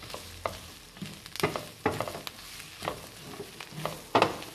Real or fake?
real